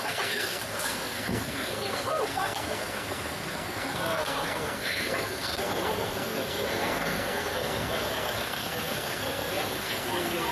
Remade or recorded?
remade